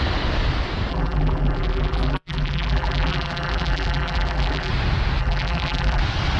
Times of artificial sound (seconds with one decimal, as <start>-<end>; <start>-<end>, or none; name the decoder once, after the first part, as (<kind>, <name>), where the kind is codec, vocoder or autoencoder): 0.9-4.7 (vocoder, BigVGAN v2); 5.2-6.0